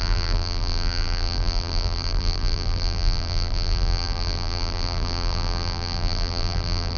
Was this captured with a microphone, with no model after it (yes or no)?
no